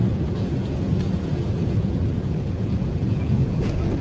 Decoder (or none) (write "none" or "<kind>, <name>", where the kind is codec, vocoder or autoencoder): vocoder, Vocos